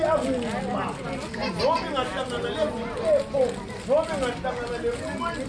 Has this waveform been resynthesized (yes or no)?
no